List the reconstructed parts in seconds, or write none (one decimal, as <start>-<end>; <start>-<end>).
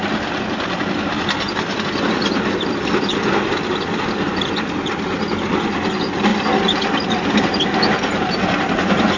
none